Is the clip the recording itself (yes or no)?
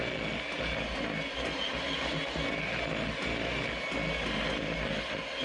yes